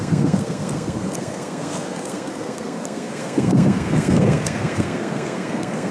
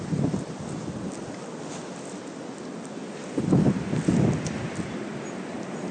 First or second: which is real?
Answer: second